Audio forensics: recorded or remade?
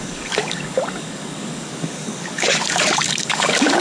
remade